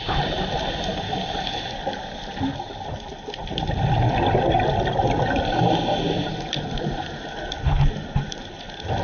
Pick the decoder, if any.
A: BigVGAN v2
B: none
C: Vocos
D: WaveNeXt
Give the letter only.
B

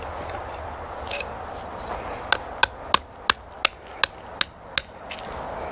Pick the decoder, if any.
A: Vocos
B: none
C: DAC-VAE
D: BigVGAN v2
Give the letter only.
B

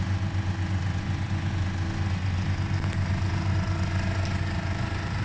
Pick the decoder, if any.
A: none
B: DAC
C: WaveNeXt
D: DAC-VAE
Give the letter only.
A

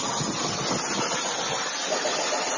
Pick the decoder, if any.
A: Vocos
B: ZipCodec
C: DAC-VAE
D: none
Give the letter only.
D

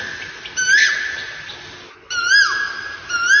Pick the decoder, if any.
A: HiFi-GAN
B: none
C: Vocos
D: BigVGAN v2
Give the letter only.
B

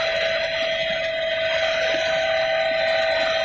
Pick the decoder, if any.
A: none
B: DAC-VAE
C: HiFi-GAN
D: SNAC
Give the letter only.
A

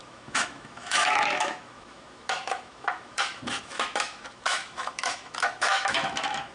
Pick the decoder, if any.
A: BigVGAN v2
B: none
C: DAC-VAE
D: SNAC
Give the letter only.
C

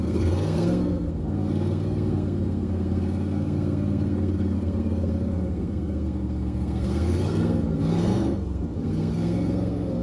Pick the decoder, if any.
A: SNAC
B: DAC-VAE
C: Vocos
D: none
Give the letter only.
A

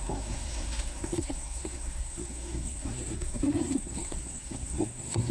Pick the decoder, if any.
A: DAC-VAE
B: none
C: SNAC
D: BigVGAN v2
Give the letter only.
C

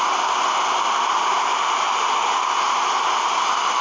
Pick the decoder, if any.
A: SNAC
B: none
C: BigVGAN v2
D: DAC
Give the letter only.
B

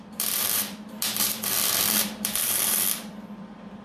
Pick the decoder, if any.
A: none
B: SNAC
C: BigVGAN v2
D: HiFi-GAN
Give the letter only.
C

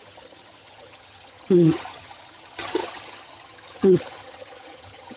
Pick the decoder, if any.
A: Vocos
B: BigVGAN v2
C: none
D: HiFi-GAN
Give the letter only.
D